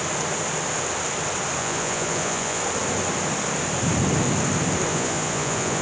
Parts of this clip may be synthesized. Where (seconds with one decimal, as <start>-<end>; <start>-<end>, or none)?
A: 1.6-2.6; 4.9-5.8